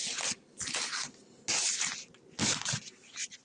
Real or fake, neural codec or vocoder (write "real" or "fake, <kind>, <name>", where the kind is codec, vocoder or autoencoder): real